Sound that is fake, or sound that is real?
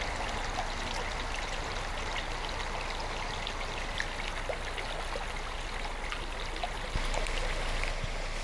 real